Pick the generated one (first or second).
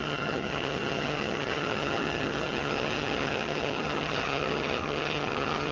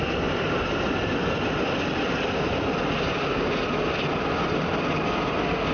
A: first